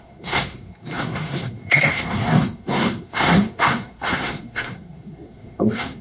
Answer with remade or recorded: remade